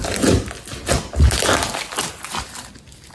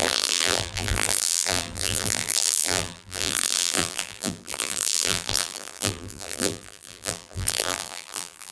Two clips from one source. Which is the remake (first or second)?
second